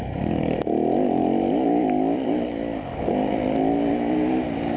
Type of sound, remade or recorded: recorded